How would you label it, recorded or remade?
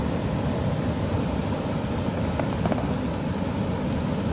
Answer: recorded